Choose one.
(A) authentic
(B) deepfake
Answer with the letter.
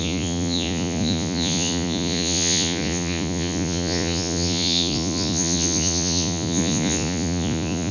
B